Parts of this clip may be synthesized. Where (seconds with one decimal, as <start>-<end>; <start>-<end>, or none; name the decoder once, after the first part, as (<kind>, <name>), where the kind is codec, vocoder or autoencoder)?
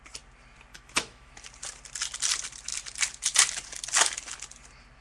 0.7-1.3 (autoencoder, DAC-VAE)